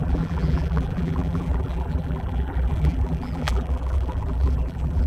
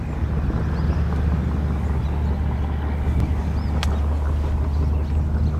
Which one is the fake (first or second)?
first